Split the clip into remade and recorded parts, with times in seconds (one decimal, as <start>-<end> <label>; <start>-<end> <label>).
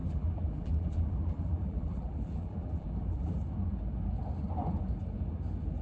0.0-3.3 remade; 3.3-5.8 recorded